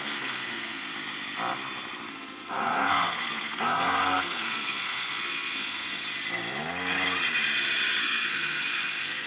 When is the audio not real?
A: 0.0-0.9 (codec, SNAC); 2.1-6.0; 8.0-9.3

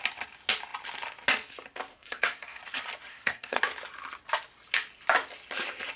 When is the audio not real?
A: 1.9-2.6 (codec, SNAC); 3.1-3.6